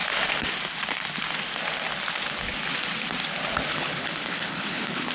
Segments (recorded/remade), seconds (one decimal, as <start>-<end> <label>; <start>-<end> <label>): 0.0-3.7 recorded; 3.7-5.1 remade